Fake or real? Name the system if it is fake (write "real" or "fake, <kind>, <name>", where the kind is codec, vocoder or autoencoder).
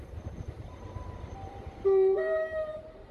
fake, vocoder, BigVGAN v2